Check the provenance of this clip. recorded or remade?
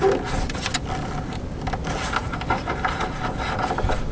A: recorded